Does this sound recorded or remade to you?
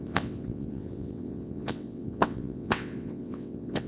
remade